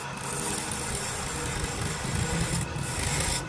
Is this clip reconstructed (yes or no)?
no